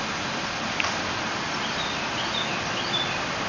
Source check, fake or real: real